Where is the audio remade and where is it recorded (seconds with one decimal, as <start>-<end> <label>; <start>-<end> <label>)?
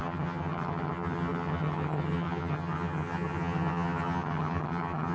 0.0-5.1 remade